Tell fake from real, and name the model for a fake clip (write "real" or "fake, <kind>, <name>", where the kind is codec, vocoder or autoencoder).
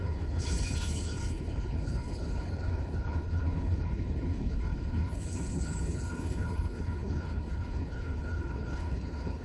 fake, codec, HILCodec